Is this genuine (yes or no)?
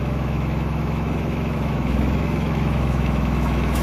no